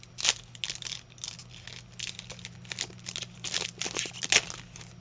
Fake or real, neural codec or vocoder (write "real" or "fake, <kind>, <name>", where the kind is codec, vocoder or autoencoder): real